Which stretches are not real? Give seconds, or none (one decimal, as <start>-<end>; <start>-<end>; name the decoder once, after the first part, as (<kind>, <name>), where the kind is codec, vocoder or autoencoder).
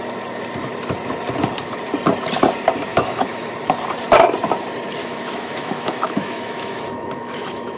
2.9-3.5 (autoencoder, DAC-VAE); 5.0-7.8